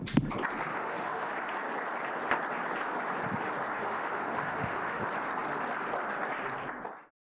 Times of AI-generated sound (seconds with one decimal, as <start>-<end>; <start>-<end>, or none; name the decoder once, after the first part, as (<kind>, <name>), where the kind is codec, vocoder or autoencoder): 0.7-1.3 (autoencoder, DAC-VAE); 3.8-5.0